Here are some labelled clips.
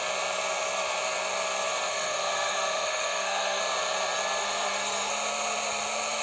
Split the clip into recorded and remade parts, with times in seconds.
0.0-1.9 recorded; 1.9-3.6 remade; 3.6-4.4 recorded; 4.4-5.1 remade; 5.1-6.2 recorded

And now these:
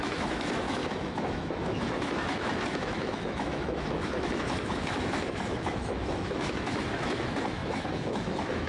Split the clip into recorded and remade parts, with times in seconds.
0.0-8.7 remade

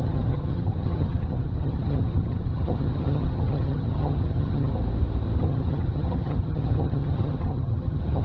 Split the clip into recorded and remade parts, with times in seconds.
0.0-4.7 remade; 4.7-5.4 recorded; 5.4-8.2 remade

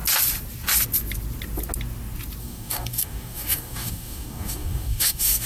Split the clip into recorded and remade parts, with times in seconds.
0.0-2.4 recorded; 2.4-5.5 remade

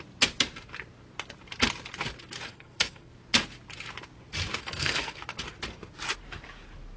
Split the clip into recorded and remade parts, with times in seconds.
0.0-2.5 recorded; 2.5-3.1 remade; 3.1-4.6 recorded; 4.6-5.2 remade; 5.2-7.0 recorded

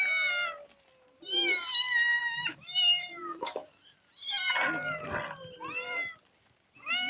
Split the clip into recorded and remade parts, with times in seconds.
0.0-2.2 recorded; 2.2-3.7 remade; 3.7-7.1 recorded

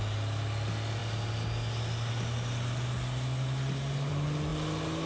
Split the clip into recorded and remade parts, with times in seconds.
0.0-5.1 recorded

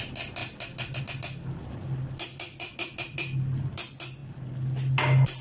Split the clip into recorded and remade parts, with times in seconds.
0.0-5.4 recorded